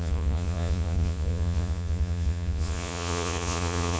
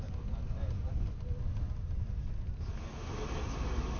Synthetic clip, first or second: first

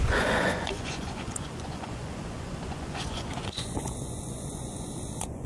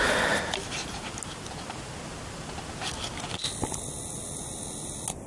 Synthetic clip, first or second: first